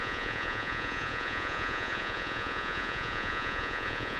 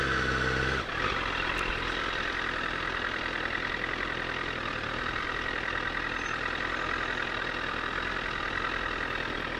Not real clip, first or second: first